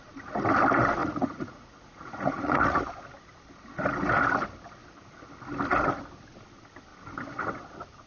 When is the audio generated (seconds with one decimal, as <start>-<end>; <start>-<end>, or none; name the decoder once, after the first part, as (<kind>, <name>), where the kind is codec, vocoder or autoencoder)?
1.0-2.8 (vocoder, Vocos)